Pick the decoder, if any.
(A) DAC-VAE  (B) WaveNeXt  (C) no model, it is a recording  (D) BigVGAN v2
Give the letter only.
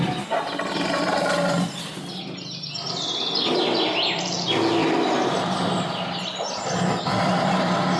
C